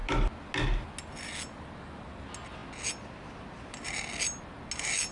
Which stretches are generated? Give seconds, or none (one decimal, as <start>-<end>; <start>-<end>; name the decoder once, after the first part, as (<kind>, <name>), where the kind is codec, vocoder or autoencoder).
none